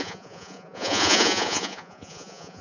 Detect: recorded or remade remade